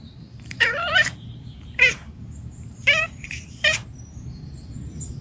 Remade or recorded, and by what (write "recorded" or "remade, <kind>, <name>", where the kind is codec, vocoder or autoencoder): remade, vocoder, BigVGAN v2